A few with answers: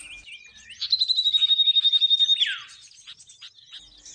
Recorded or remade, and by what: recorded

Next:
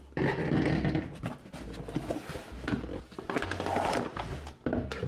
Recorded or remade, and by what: recorded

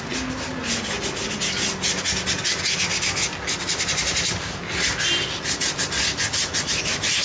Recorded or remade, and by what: recorded